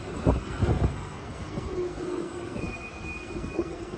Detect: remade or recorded remade